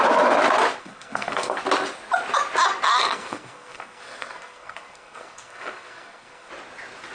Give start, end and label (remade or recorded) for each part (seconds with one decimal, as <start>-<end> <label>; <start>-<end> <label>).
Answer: 0.0-0.8 recorded; 0.8-1.6 remade; 1.6-2.9 recorded; 2.9-6.5 remade; 6.5-7.1 recorded